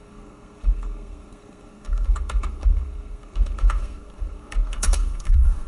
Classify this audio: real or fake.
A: fake